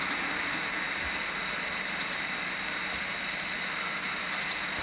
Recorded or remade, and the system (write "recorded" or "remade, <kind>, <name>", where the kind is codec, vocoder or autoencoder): recorded